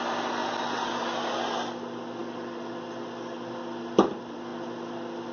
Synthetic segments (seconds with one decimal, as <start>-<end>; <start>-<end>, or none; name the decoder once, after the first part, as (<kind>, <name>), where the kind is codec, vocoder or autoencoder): none